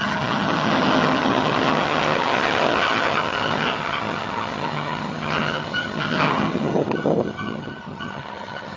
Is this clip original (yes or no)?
no